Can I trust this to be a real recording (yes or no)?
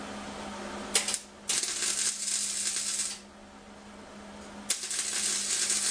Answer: yes